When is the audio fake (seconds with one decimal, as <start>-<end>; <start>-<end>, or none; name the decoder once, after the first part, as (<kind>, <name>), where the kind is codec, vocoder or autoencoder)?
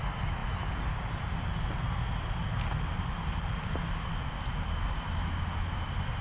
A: none